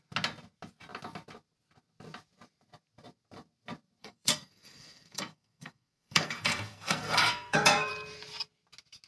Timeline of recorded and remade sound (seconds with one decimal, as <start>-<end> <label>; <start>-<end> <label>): 0.0-4.0 recorded; 4.0-7.9 remade; 7.9-9.1 recorded